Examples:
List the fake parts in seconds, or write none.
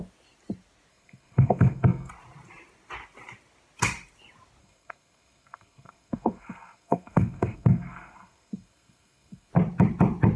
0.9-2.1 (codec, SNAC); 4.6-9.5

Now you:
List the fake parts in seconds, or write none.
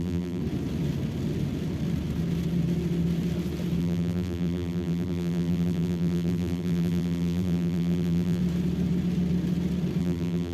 0.0-0.4 (vocoder, BigVGAN v2); 3.8-8.4; 10.0-10.5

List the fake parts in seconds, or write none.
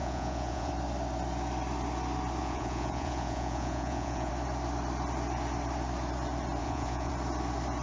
0.0-0.7 (vocoder, Vocos); 2.4-4.3; 6.6-7.1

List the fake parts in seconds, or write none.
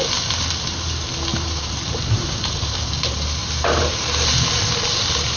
1.3-2.8 (vocoder, BigVGAN v2); 3.4-4.3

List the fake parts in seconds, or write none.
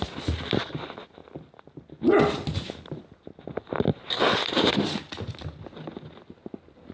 none